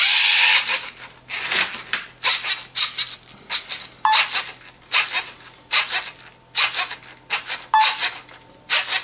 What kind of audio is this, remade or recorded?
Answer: recorded